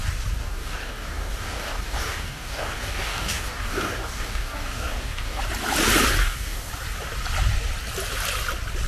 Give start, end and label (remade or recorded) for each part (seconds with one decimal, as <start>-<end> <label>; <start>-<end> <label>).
0.0-0.4 recorded; 0.4-5.4 remade; 5.4-6.2 recorded; 6.2-6.7 remade; 6.7-8.9 recorded